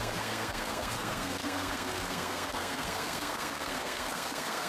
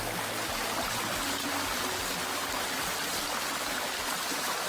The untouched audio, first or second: second